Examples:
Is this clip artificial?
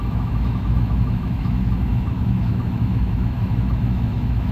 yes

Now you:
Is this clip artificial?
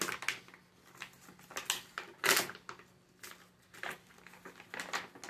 no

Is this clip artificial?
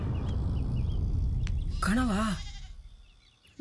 no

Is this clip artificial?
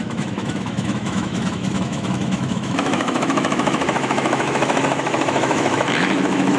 yes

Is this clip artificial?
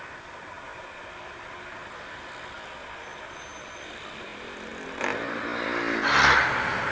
no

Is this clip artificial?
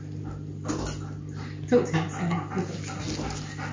no